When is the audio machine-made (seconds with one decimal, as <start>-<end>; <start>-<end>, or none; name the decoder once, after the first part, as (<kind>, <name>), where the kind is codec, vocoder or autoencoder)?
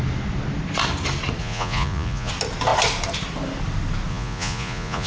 1.4-2.3 (vocoder, Vocos); 4.1-5.1